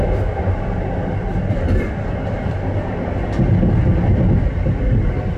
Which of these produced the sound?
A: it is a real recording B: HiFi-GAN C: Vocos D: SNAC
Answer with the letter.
A